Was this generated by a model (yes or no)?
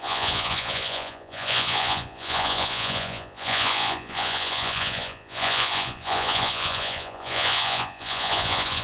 yes